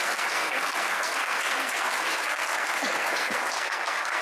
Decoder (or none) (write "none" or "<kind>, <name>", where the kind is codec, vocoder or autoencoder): codec, SNAC